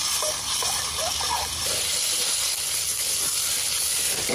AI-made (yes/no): yes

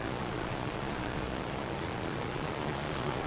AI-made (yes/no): yes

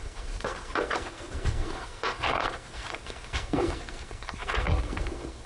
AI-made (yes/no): yes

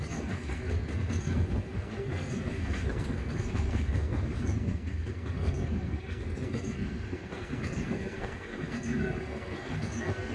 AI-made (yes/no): yes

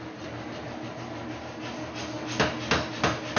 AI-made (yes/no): no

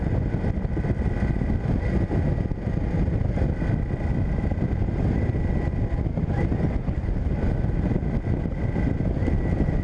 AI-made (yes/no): no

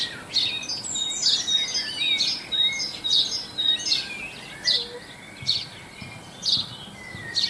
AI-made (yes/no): no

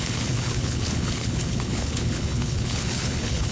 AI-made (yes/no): yes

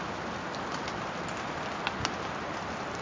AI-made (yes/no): no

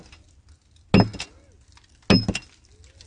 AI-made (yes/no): no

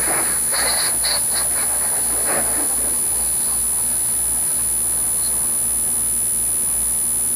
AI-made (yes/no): no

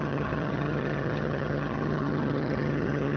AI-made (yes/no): yes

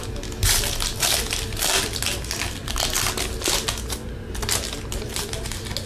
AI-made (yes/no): no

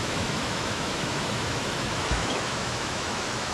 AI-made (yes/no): yes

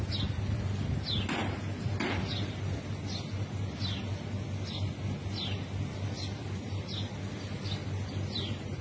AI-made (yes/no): no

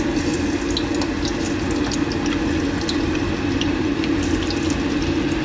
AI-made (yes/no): no